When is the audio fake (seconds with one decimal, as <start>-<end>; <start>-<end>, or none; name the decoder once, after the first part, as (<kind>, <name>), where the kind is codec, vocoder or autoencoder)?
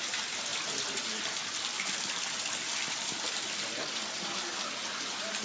none